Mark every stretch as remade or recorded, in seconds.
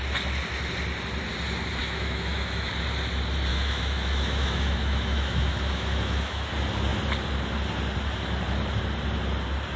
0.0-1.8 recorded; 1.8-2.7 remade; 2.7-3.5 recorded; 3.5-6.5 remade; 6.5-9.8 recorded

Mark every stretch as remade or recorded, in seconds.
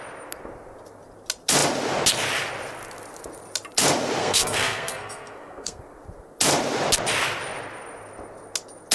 0.0-4.2 recorded; 4.2-5.8 remade; 5.8-8.9 recorded